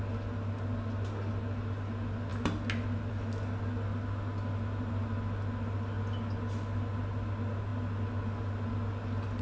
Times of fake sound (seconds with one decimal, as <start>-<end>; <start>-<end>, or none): none